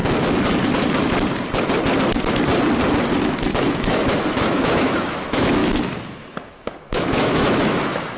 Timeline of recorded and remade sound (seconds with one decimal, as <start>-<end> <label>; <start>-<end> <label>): 0.0-3.6 recorded; 3.6-5.6 remade; 5.6-6.2 recorded; 6.2-8.2 remade